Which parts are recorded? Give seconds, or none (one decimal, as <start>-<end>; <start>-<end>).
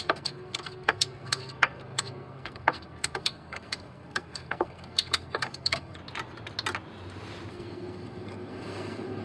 6.0-7.5